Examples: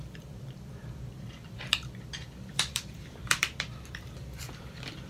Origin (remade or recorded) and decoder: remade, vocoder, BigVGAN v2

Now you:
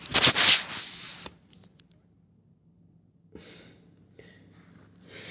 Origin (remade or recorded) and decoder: recorded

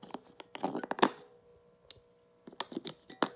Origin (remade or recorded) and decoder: recorded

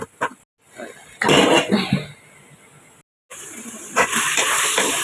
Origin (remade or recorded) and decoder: recorded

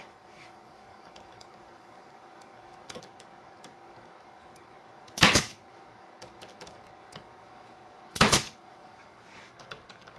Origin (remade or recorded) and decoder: remade, codec, DAC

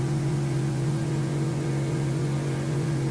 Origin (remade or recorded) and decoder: remade, vocoder, Vocos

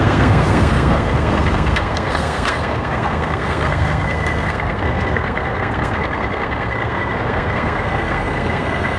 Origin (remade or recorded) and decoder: remade, codec, SNAC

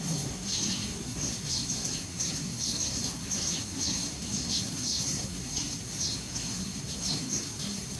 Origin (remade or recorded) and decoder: remade, codec, SNAC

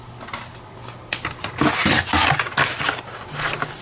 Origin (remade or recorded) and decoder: recorded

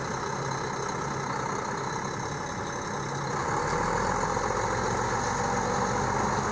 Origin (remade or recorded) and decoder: recorded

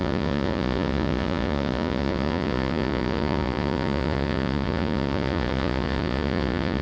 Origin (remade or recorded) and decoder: remade, vocoder, Vocos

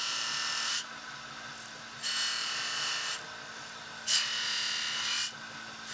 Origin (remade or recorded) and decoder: recorded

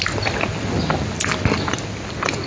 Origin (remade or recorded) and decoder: recorded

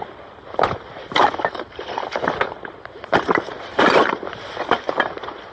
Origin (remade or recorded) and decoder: remade, vocoder, BigVGAN v2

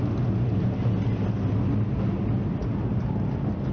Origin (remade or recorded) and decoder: recorded